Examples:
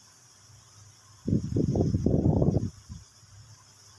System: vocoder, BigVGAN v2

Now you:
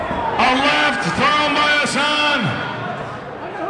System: none